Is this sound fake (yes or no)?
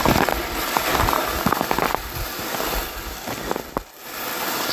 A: no